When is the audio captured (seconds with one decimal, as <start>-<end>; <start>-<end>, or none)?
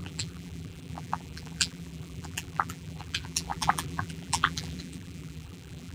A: none